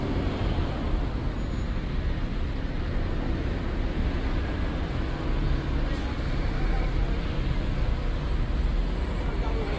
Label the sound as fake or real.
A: real